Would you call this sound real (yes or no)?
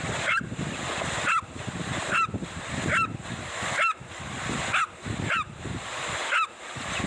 yes